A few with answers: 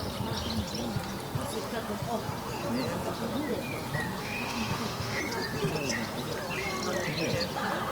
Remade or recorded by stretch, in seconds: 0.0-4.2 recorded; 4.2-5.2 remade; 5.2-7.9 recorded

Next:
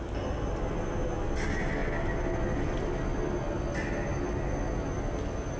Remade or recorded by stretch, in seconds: 0.0-5.6 recorded